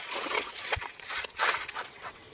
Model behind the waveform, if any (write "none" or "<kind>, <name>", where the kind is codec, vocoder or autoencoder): vocoder, WaveNeXt